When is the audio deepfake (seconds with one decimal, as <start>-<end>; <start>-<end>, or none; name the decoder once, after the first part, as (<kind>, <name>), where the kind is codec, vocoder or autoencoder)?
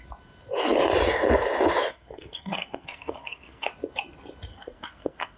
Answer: 1.9-3.7 (codec, SNAC); 4.5-5.4